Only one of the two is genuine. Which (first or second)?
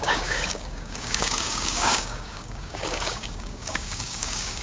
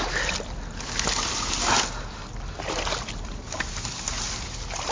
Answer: second